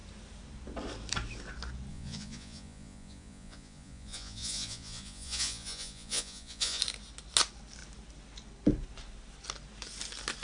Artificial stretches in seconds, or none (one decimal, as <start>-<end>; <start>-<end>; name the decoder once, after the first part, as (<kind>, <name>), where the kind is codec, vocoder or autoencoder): 1.9-6.8 (vocoder, Vocos)